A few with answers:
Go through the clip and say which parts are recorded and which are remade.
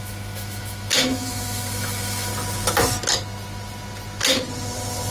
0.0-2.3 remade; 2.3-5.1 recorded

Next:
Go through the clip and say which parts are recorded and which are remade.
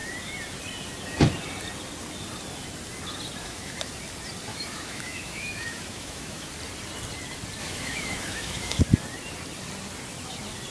0.0-3.4 recorded; 3.4-3.9 remade; 3.9-4.5 recorded; 4.5-6.5 remade; 6.5-7.6 recorded; 7.6-8.8 remade; 8.8-10.7 recorded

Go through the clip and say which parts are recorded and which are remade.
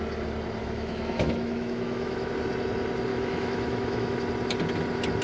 0.0-0.6 recorded; 0.6-2.3 remade; 2.3-3.1 recorded; 3.1-4.3 remade; 4.3-5.2 recorded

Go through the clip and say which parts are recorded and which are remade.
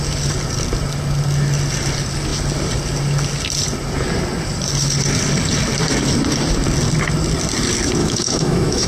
0.0-8.0 recorded; 8.0-8.9 remade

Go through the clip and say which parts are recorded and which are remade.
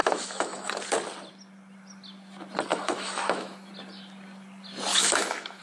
0.0-0.7 remade; 0.7-2.7 recorded; 2.7-3.7 remade; 3.7-4.9 recorded; 4.9-5.6 remade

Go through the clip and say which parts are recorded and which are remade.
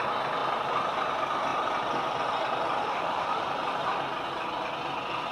0.0-2.8 recorded; 2.8-3.4 remade; 3.4-5.3 recorded